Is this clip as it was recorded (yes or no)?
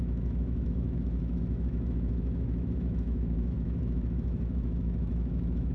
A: no